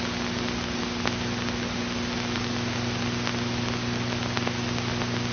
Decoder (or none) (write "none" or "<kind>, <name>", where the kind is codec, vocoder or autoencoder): none